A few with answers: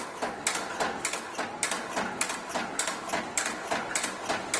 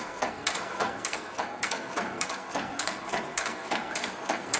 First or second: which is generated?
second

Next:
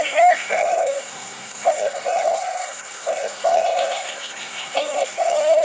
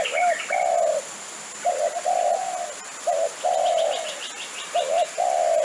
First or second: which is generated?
first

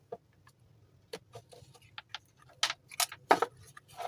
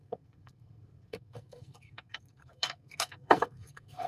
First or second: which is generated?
second